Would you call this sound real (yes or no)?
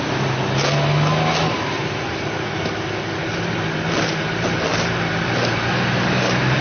yes